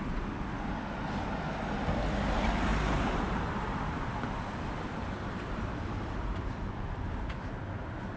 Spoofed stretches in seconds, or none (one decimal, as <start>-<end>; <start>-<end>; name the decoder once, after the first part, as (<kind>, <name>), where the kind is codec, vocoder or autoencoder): 2.7-6.7 (vocoder, BigVGAN v2)